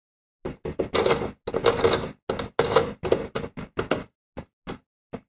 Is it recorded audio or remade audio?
recorded